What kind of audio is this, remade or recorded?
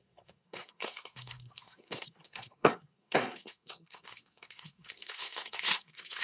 remade